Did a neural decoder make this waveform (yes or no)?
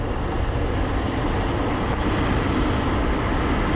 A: no